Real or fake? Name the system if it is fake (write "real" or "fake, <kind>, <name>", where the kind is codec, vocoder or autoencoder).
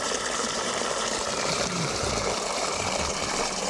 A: fake, vocoder, BigVGAN v2